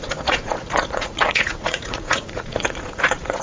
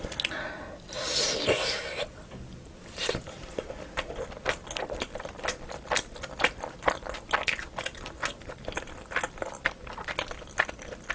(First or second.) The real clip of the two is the second